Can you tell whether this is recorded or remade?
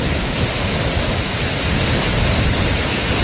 recorded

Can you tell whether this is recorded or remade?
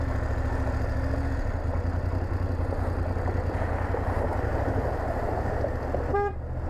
recorded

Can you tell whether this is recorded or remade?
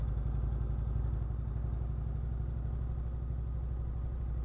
recorded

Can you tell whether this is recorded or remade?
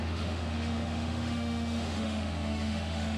remade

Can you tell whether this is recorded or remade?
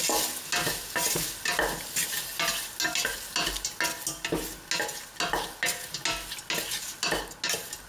recorded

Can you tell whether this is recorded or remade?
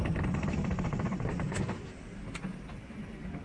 recorded